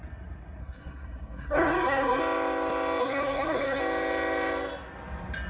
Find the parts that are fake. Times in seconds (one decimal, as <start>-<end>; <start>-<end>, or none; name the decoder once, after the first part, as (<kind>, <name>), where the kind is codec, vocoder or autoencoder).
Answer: 0.6-2.2 (codec, SNAC); 3.0-3.8